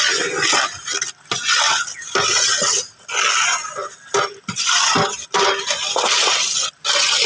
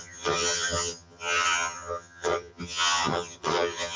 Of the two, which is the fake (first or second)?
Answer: second